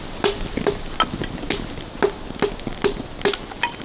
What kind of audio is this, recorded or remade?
recorded